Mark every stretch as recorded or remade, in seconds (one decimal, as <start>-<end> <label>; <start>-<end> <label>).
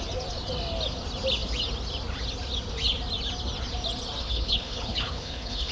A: 0.0-4.2 recorded; 4.2-5.7 remade